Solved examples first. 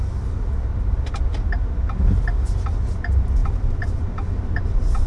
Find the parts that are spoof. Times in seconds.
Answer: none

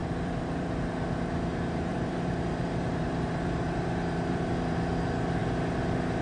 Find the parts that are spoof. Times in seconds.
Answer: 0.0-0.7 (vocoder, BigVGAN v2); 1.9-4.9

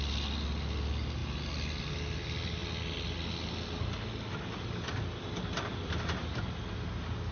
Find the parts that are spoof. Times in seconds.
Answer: 5.7-6.4 (vocoder, BigVGAN v2)

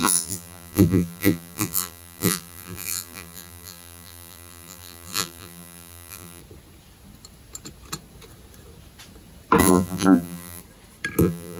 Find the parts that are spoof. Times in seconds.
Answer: 0.0-6.4 (vocoder, BigVGAN v2); 9.6-10.6; 11.2-11.6

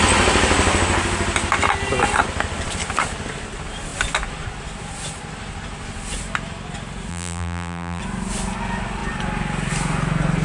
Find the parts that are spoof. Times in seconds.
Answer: 7.1-8.0 (vocoder, BigVGAN v2)

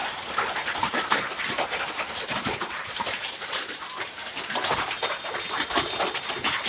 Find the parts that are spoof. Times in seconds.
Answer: 0.0-4.2 (vocoder, BigVGAN v2)

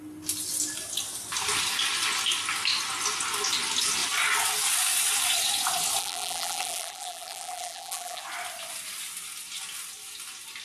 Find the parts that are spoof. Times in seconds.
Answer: 6.0-8.2 (vocoder, BigVGAN v2)

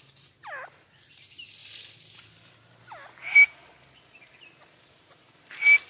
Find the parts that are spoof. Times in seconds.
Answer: none